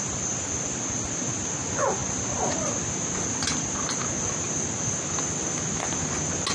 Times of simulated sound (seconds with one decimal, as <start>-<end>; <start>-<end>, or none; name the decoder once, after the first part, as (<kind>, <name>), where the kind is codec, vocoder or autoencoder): none

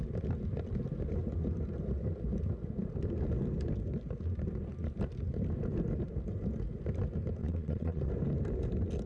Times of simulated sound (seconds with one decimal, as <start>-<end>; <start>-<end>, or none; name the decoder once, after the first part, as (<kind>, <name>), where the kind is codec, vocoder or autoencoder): 7.4-8.1 (vocoder, WaveNeXt)